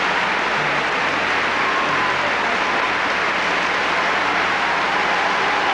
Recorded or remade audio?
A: recorded